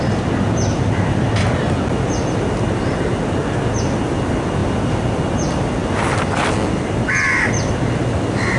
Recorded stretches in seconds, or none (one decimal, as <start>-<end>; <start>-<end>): 0.0-8.6